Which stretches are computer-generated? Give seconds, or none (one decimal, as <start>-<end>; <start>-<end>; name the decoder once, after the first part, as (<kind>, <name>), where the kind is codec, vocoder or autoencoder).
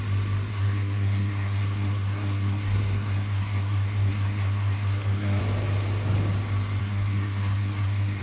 0.5-5.4 (codec, SNAC); 6.8-8.2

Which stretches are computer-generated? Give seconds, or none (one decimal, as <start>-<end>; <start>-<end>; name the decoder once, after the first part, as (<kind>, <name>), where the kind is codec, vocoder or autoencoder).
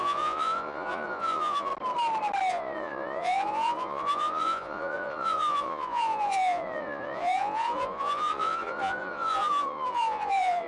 0.0-1.7 (vocoder, Vocos); 2.5-10.7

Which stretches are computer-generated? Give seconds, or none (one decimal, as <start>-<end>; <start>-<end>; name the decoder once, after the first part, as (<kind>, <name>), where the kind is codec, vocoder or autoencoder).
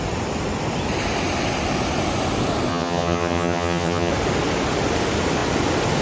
2.7-4.1 (vocoder, HiFi-GAN)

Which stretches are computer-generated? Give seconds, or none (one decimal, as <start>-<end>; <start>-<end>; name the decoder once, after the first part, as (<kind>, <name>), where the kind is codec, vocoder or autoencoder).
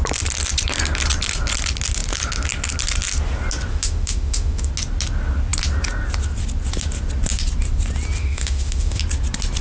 3.7-4.7 (autoencoder, DAC-VAE); 8.2-9.0